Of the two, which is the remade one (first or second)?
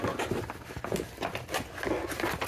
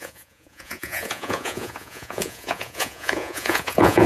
second